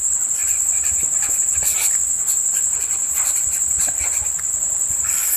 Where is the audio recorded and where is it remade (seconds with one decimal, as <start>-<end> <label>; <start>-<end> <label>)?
0.0-5.4 remade